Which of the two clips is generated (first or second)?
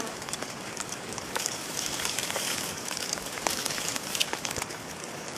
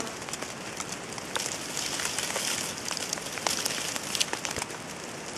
first